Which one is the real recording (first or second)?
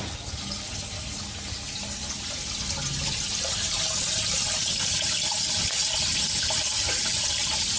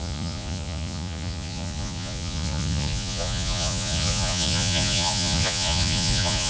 first